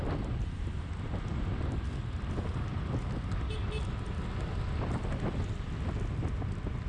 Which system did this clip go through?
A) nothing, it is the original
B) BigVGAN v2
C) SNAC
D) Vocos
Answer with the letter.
A